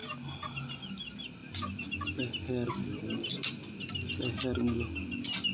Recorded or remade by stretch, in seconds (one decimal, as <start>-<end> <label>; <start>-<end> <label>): 0.0-5.5 recorded